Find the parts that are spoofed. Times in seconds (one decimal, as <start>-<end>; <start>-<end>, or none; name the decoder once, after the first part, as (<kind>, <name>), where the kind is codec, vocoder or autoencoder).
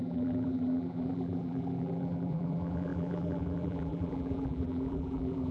0.0-5.5 (vocoder, BigVGAN v2)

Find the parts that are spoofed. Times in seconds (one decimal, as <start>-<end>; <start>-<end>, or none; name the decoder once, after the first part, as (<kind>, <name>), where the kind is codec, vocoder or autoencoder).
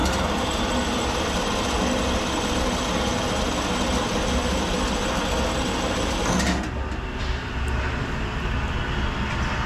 0.0-1.3 (vocoder, BigVGAN v2)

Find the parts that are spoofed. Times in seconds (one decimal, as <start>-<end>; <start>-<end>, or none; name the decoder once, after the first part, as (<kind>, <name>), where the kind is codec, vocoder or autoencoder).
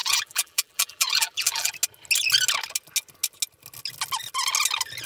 0.0-1.7 (vocoder, BigVGAN v2)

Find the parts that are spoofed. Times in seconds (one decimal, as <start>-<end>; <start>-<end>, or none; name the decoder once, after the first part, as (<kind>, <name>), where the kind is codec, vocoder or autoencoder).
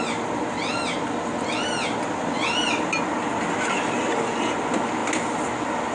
none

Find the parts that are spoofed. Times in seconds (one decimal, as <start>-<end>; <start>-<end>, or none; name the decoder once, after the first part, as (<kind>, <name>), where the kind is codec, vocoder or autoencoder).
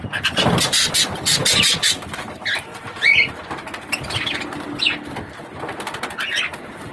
0.0-1.4 (vocoder, BigVGAN v2); 2.0-6.9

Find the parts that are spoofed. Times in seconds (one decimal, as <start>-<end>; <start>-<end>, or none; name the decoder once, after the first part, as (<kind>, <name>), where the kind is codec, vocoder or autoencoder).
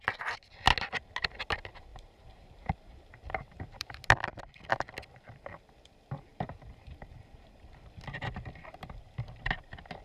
1.9-4.0 (vocoder, BigVGAN v2)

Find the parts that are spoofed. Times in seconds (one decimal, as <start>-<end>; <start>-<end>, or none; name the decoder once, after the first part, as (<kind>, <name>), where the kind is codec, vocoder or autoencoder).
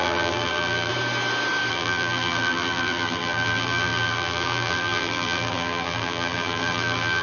0.0-0.9 (vocoder, BigVGAN v2); 1.7-7.2